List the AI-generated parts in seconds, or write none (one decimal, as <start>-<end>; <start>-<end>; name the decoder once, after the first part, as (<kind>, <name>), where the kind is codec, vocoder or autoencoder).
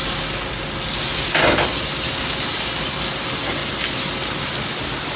none